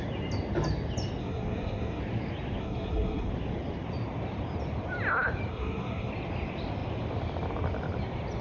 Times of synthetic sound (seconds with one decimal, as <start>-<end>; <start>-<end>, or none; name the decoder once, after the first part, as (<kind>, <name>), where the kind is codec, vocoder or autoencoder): 1.2-2.0 (codec, SNAC); 2.6-3.3; 5.5-6.1